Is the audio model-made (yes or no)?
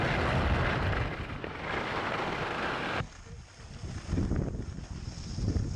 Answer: no